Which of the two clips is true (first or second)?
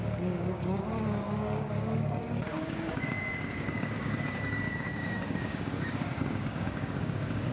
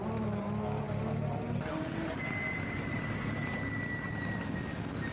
second